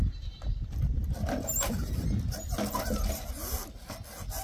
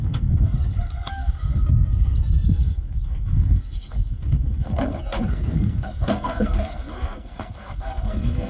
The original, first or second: first